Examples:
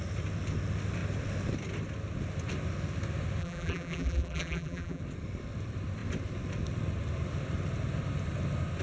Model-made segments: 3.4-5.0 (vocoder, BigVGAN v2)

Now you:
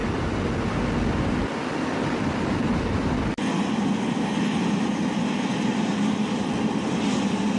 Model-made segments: 0.0-7.6 (vocoder, BigVGAN v2)

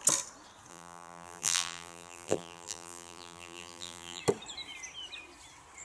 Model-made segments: 0.7-4.2 (vocoder, BigVGAN v2)

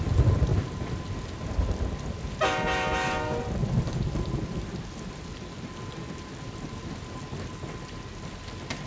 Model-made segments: none

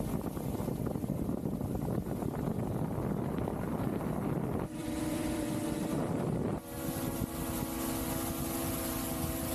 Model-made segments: 4.8-5.6 (vocoder, BigVGAN v2)

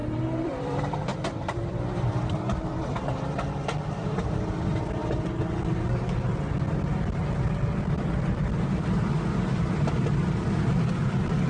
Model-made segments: 0.0-5.0 (vocoder, BigVGAN v2); 7.8-11.5

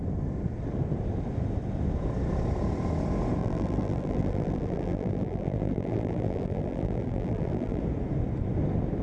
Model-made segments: 3.4-7.8 (vocoder, BigVGAN v2)

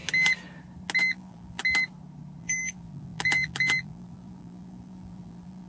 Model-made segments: 1.0-1.6 (vocoder, BigVGAN v2); 2.4-5.7